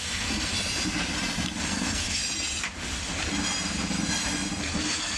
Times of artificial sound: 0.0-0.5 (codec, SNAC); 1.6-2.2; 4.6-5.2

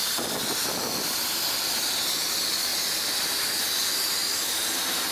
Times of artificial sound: none